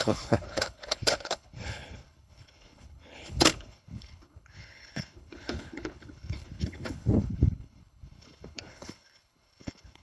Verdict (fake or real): fake